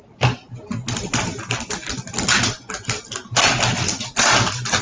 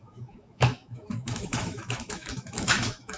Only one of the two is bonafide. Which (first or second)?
first